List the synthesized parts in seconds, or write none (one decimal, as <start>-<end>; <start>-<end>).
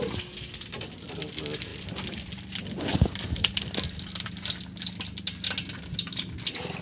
none